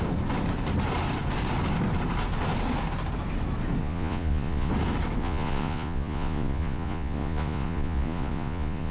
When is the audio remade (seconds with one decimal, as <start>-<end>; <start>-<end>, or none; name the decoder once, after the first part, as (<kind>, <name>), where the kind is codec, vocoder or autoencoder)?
3.8-4.7 (vocoder, Vocos); 5.2-8.9